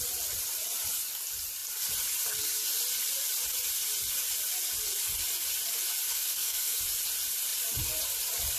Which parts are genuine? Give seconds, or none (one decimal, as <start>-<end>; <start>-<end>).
0.0-6.1; 6.8-8.6